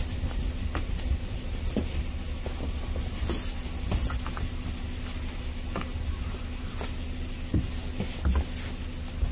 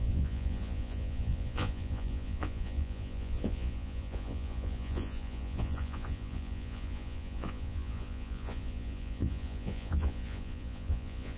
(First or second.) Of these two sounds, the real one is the first